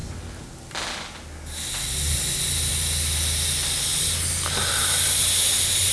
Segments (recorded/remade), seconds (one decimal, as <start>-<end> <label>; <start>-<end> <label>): 0.0-5.9 recorded